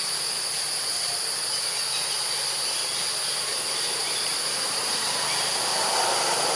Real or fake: real